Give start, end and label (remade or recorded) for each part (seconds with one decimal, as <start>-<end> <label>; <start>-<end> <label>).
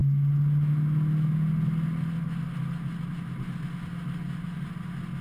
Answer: 0.0-5.2 recorded